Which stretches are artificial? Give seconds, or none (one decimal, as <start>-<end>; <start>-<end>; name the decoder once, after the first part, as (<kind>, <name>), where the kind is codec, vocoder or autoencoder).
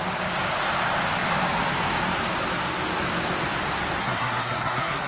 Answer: 4.0-5.1 (codec, SNAC)